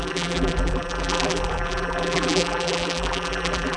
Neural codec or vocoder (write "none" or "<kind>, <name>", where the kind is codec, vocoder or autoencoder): vocoder, BigVGAN v2